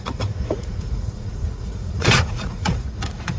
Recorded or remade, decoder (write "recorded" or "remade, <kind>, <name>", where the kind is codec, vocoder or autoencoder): remade, vocoder, Vocos